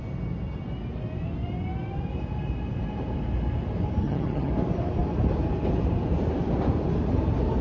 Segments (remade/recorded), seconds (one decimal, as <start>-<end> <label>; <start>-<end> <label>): 0.0-4.0 recorded; 4.0-4.5 remade; 4.5-7.6 recorded